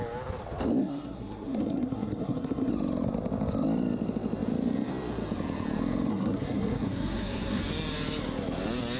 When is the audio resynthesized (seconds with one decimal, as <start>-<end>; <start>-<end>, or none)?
0.8-2.7; 6.1-7.6